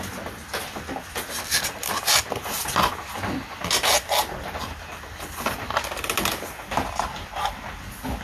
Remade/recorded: recorded